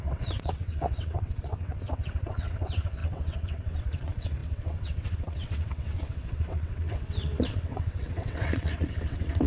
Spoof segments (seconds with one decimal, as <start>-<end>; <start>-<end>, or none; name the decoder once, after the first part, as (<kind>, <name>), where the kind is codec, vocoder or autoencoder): 0.0-9.5 (vocoder, WaveNeXt)